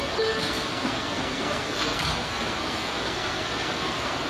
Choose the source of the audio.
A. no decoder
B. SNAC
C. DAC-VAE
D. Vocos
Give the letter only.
B